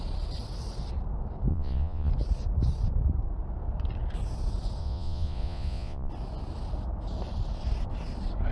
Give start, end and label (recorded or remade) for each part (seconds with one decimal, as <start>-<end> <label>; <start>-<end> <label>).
0.0-1.5 recorded; 1.5-2.1 remade; 2.1-4.8 recorded; 4.8-6.1 remade; 6.1-8.5 recorded